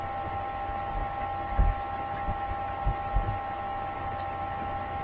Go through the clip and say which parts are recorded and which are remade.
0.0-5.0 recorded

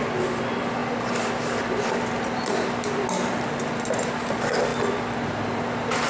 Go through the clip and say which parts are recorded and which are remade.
0.0-6.1 recorded

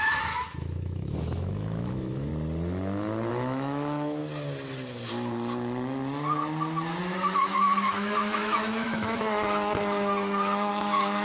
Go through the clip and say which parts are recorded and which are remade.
0.0-2.3 remade; 2.3-3.3 recorded; 3.3-4.2 remade; 4.2-7.0 recorded; 7.0-11.2 remade

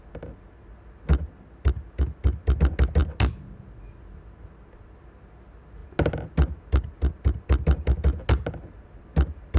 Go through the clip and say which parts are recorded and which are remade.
0.0-9.6 recorded

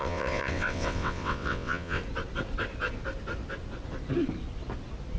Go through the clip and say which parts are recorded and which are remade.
0.0-2.0 remade; 2.0-5.2 recorded

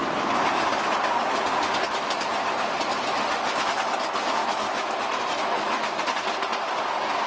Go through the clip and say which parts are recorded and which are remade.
0.0-4.4 recorded; 4.4-6.0 remade; 6.0-7.3 recorded

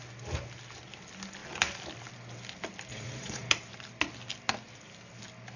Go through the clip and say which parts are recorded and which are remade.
0.0-2.9 recorded; 2.9-3.5 remade; 3.5-5.6 recorded

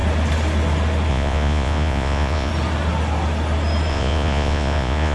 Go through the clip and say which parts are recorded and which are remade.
0.0-1.1 recorded; 1.1-2.5 remade; 2.5-3.9 recorded; 3.9-5.1 remade